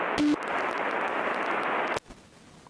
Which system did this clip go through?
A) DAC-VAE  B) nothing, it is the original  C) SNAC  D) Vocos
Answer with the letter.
B